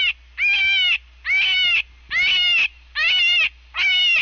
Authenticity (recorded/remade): recorded